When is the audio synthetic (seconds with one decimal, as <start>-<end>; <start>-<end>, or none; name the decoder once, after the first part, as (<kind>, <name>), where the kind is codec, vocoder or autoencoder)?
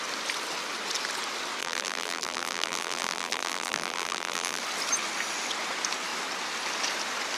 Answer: 1.6-4.6 (vocoder, BigVGAN v2)